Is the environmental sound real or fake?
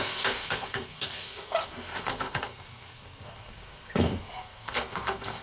fake